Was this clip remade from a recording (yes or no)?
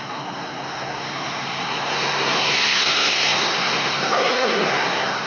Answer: yes